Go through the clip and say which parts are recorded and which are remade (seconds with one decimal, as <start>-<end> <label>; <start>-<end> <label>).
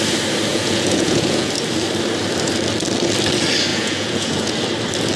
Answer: 0.0-0.5 recorded; 0.5-1.5 remade; 1.5-3.7 recorded; 3.7-4.5 remade; 4.5-5.2 recorded